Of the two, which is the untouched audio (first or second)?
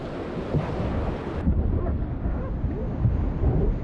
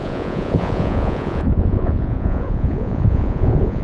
first